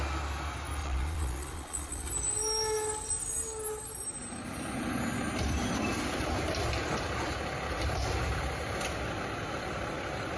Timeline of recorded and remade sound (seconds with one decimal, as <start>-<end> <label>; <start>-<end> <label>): 0.0-0.8 recorded; 0.8-2.1 remade; 2.1-10.4 recorded